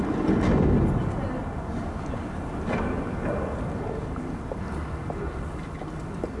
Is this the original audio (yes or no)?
yes